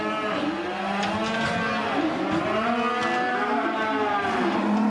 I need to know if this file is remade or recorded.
recorded